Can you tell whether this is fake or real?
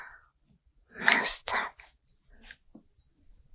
real